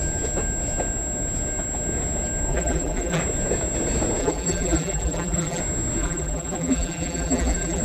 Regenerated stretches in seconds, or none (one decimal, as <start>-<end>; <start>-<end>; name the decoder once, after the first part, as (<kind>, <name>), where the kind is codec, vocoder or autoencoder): 2.5-3.2 (vocoder, BigVGAN v2); 4.2-5.6; 6.0-7.8